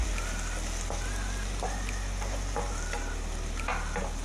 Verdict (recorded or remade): recorded